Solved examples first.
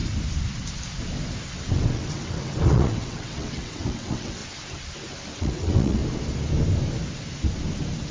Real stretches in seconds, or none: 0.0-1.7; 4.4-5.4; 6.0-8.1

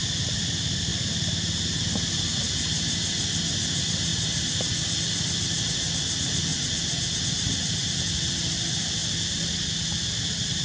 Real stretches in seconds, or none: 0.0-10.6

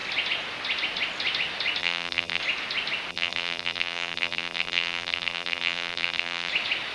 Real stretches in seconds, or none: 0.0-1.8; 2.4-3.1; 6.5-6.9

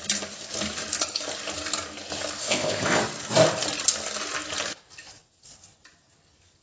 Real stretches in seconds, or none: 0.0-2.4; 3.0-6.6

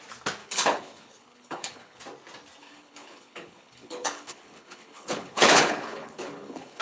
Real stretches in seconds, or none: 0.0-0.4; 2.0-2.6